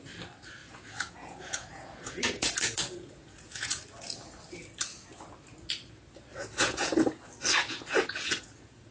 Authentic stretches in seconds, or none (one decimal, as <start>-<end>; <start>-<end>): 0.0-0.6; 3.8-6.3; 7.0-7.6